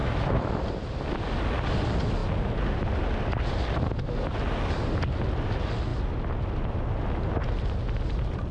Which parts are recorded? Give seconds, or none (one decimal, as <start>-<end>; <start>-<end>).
0.5-8.5